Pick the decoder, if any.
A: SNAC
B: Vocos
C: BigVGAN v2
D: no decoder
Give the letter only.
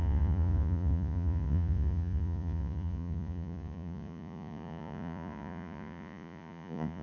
B